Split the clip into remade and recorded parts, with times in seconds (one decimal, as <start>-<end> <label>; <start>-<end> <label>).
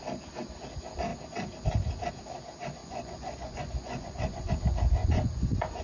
0.0-2.8 recorded; 2.8-4.5 remade; 4.5-5.0 recorded; 5.0-5.8 remade